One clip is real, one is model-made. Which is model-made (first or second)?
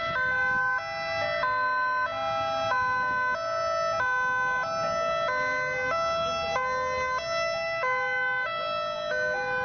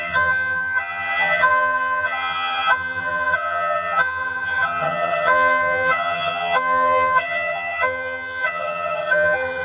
second